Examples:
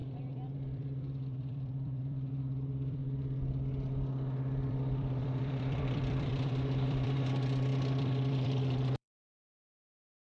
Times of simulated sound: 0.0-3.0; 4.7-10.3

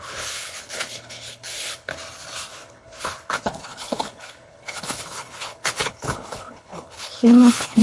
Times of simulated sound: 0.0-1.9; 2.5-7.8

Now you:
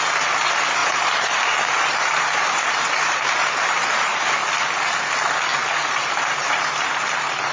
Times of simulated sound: 0.8-4.3; 6.0-6.8

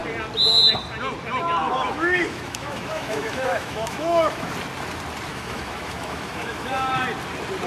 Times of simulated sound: 1.6-4.5; 5.3-6.9